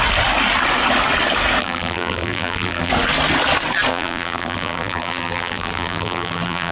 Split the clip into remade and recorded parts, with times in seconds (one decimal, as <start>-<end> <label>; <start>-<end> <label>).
0.0-1.6 recorded; 1.6-2.9 remade; 2.9-3.9 recorded; 3.9-6.7 remade